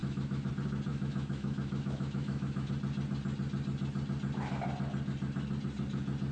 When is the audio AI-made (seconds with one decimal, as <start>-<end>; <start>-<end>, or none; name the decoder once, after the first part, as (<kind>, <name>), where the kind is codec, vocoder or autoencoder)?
0.0-0.5 (autoencoder, DAC-VAE); 0.9-2.7